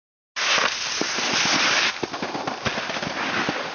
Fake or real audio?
real